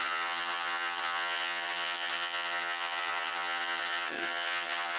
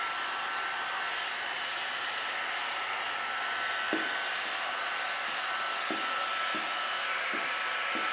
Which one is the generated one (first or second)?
first